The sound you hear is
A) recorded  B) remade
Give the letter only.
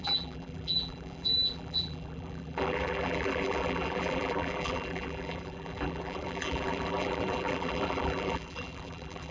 B